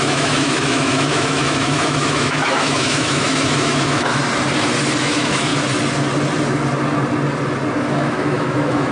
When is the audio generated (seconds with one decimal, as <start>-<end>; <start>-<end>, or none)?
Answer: 0.0-4.2; 5.0-5.5; 7.8-8.9